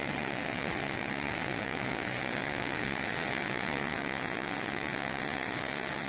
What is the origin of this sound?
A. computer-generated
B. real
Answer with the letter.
A